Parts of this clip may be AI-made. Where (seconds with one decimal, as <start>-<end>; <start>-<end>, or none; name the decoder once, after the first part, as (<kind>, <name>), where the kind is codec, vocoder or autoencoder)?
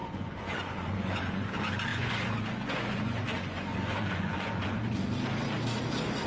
0.0-1.5 (vocoder, Vocos); 1.9-4.7